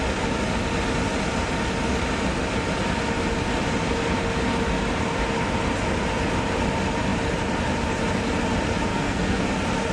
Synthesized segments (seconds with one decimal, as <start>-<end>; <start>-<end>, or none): 8.9-9.4